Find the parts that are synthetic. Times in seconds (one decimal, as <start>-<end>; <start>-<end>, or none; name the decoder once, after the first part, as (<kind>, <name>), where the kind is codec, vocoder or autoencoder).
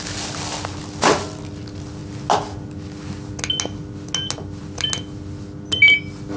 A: none